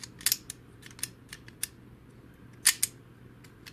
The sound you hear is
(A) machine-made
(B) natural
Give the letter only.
B